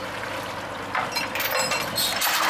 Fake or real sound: real